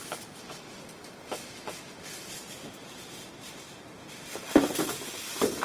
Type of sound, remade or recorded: remade